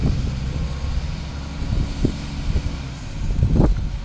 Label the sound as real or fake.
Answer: real